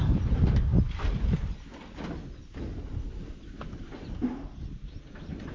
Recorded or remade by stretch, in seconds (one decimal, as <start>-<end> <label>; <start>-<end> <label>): 0.0-5.5 recorded